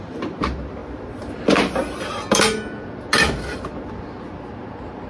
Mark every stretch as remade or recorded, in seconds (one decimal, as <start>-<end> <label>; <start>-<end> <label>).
0.0-5.1 recorded